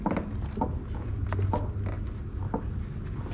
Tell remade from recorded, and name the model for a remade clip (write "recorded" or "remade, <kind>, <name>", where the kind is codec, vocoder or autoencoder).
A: recorded